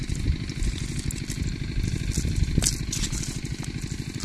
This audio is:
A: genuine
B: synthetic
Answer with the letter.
A